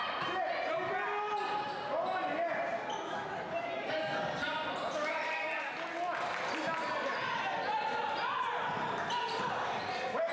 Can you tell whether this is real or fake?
real